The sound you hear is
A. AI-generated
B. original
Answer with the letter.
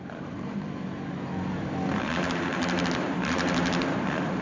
A